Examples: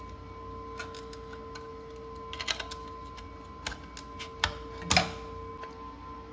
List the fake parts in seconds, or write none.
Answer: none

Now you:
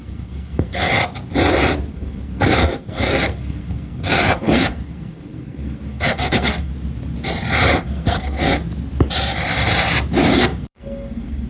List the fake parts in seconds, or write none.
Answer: 0.0-0.9; 1.9-6.7; 7.8-8.5; 10.4-11.5

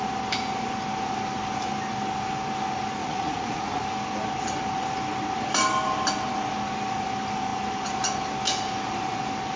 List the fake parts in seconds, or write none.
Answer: 3.0-3.8

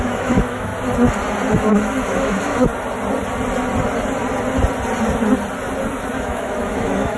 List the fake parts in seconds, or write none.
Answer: 0.0-0.7; 1.5-2.7; 6.2-7.2

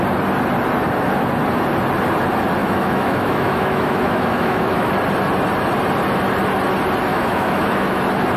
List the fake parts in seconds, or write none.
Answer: 2.6-4.9; 7.1-8.0